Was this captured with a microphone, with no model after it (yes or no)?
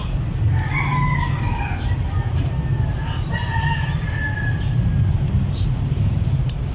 yes